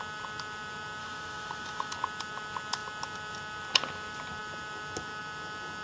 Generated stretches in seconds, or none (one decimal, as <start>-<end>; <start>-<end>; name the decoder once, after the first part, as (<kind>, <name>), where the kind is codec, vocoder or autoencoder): 1.0-1.9 (autoencoder, DAC-VAE)